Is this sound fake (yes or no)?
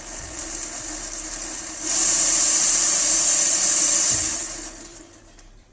no